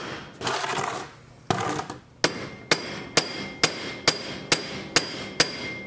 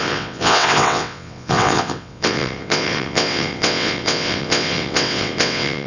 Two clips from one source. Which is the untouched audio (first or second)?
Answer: first